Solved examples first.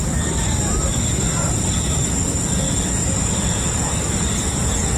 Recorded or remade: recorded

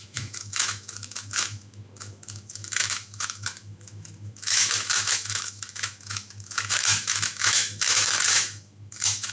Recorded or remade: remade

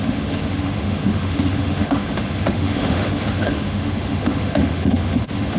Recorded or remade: remade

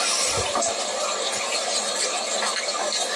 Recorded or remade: recorded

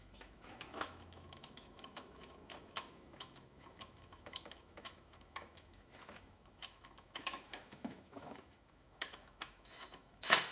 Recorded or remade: remade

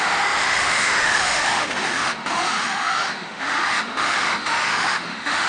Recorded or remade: remade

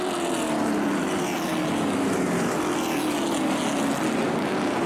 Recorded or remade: recorded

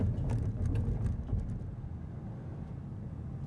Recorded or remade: recorded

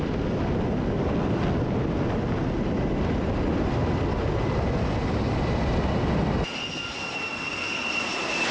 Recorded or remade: recorded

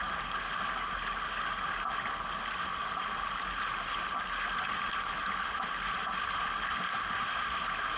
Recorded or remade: recorded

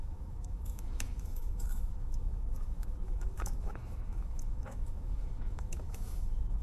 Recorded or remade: remade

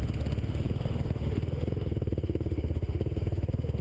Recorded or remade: remade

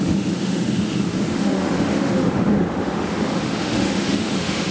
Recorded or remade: remade